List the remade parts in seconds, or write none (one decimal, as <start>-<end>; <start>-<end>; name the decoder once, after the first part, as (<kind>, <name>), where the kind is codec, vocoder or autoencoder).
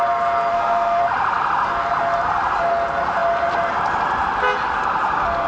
0.5-1.0 (autoencoder, DAC-VAE)